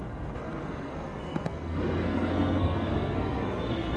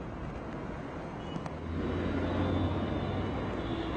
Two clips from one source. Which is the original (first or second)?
second